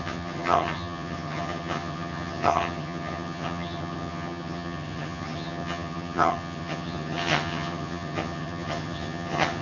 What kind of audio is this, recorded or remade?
remade